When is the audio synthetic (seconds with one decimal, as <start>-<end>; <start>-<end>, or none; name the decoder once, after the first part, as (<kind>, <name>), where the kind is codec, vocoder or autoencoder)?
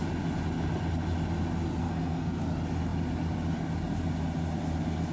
1.8-2.4 (codec, SNAC)